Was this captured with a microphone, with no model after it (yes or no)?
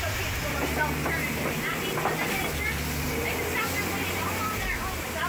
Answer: yes